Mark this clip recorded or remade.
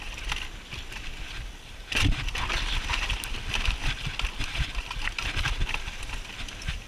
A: recorded